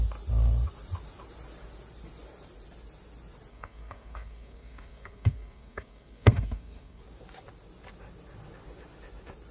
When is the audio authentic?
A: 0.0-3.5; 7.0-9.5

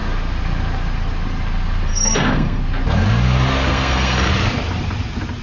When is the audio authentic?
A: 0.0-1.9; 2.6-3.7; 4.3-5.4

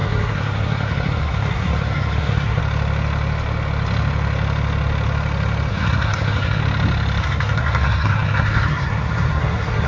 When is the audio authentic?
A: 2.6-5.7; 6.6-7.2

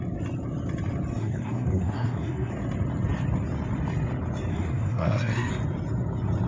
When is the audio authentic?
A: 0.0-1.2; 2.5-4.5; 5.5-6.5

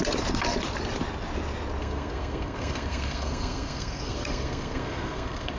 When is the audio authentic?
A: 0.0-1.8

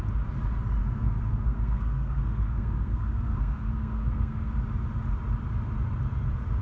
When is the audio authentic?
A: 0.0-0.8; 4.5-6.6

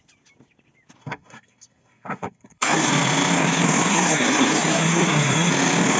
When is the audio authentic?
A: 0.0-1.0; 2.9-3.9; 5.5-6.0

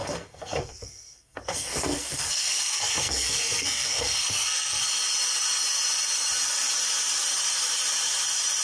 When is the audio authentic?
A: 4.8-8.6